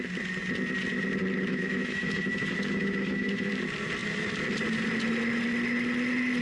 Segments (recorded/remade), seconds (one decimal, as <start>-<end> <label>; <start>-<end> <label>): 0.0-1.5 recorded; 1.5-3.5 remade; 3.5-6.4 recorded